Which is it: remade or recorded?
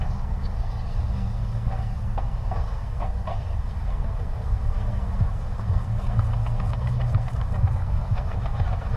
remade